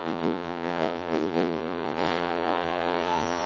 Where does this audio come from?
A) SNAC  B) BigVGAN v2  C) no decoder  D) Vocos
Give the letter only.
D